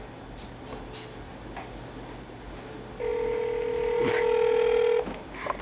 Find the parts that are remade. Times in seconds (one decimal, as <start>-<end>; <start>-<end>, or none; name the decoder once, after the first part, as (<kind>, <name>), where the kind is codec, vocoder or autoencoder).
none

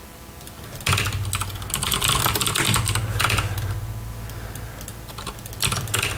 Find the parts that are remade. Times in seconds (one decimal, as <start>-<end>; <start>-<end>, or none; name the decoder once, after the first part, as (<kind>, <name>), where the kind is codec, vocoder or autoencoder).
none

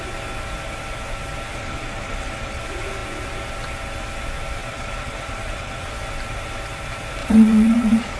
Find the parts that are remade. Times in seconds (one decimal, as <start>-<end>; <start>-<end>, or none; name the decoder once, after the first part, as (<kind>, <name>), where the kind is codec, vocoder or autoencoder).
1.5-2.6 (vocoder, Vocos); 4.6-5.9; 7.2-8.2

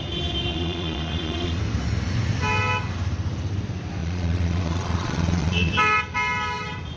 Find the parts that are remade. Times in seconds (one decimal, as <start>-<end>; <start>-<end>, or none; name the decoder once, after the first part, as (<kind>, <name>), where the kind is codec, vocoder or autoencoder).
0.5-1.6 (vocoder, Vocos); 4.0-5.7

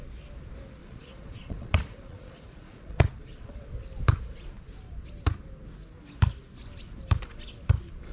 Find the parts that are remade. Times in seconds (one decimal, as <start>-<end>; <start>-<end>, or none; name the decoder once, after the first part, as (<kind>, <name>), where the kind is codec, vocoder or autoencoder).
0.8-3.7 (vocoder, Vocos)

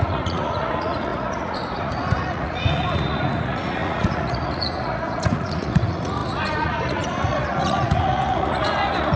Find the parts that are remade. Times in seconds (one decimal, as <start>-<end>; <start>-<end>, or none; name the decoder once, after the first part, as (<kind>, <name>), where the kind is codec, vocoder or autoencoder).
0.0-9.2 (vocoder, Vocos)

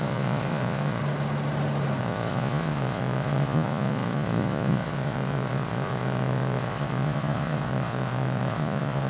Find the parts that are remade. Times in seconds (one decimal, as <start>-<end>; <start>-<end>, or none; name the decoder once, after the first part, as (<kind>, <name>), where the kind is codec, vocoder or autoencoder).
0.0-1.0 (vocoder, Vocos); 2.0-9.1